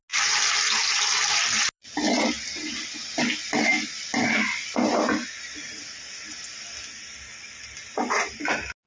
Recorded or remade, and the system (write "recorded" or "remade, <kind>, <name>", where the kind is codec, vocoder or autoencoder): recorded